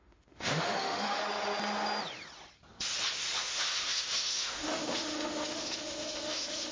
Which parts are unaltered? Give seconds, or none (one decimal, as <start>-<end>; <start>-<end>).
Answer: 1.2-3.4